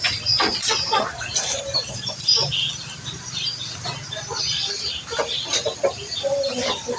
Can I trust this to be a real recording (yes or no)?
yes